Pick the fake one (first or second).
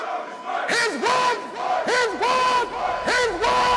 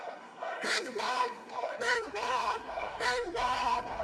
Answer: second